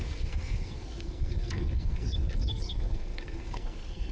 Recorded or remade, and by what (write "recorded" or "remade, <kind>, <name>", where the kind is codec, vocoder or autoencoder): remade, codec, SNAC